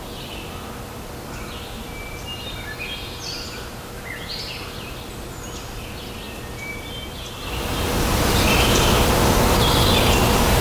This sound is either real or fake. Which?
real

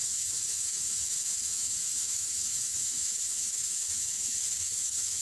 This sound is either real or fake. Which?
fake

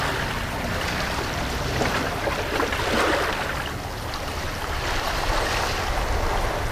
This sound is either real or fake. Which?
real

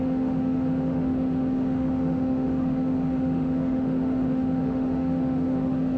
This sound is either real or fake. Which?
fake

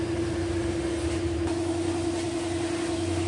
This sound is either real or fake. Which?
real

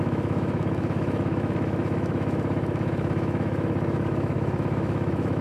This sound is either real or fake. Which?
fake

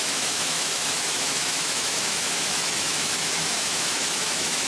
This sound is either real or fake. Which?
fake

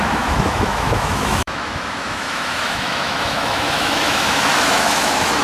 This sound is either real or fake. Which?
fake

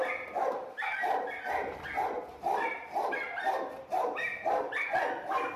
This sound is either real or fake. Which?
real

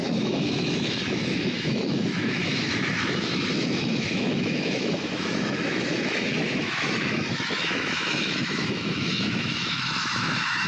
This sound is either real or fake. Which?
fake